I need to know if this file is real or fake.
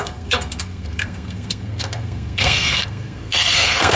fake